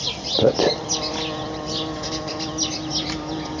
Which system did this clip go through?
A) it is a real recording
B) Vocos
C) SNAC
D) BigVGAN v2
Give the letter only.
A